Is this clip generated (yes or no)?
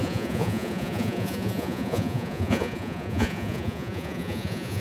yes